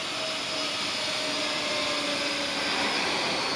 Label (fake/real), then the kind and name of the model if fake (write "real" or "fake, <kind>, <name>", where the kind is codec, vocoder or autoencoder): real